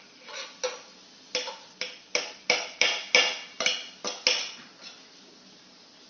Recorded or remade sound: recorded